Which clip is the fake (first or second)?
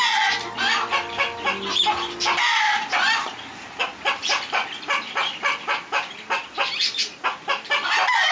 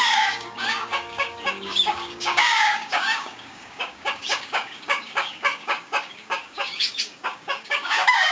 second